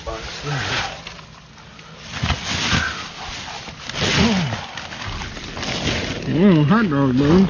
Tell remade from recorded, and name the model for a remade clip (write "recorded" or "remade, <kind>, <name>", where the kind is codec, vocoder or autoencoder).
recorded